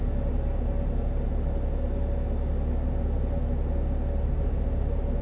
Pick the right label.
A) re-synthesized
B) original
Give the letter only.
B